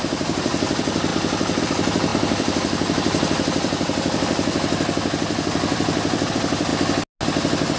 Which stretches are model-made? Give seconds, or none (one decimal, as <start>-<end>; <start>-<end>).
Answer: 0.0-1.1; 1.6-6.7